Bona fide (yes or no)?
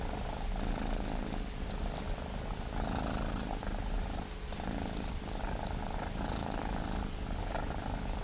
yes